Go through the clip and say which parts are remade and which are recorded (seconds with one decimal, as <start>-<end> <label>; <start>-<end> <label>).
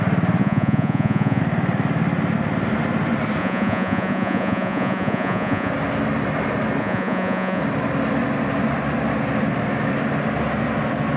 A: 0.0-0.4 recorded; 0.4-1.4 remade; 1.4-3.4 recorded; 3.4-5.7 remade; 5.7-6.8 recorded; 6.8-7.6 remade; 7.6-11.2 recorded